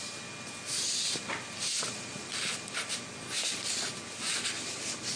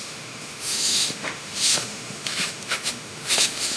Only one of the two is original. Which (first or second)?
first